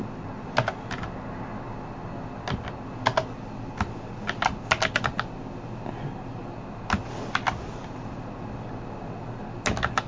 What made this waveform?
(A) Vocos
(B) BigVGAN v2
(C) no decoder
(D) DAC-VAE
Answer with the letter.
C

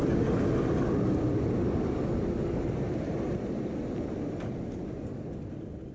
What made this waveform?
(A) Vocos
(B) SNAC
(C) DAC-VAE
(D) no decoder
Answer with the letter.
D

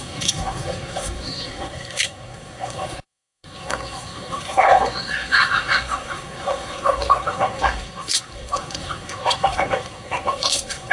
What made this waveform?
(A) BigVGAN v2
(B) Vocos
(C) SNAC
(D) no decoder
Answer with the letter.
C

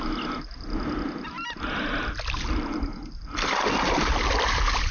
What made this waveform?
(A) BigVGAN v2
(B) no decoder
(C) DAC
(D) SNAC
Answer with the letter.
B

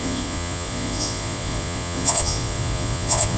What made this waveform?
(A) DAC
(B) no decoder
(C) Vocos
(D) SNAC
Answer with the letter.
C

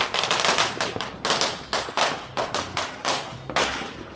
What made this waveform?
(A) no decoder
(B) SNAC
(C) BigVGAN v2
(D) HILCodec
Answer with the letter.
A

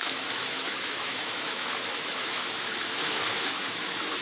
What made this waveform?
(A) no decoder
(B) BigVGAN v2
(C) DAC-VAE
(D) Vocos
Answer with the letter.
C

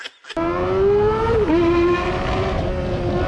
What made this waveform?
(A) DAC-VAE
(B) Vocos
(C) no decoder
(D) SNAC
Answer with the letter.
C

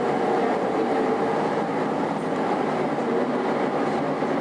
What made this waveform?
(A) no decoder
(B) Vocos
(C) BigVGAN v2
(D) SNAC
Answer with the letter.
A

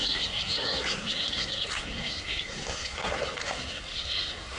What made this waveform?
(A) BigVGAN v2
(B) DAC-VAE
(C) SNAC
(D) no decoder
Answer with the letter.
C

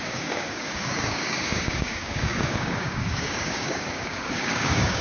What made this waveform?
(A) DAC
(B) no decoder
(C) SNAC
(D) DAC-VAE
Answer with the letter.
A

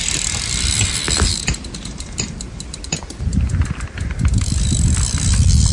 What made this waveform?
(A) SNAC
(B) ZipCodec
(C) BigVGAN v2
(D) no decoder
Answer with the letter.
C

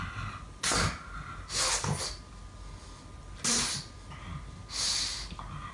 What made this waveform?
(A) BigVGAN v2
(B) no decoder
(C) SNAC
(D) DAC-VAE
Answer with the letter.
B